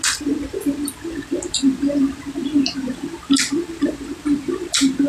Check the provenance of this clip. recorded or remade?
recorded